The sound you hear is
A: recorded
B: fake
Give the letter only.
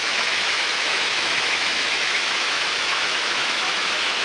B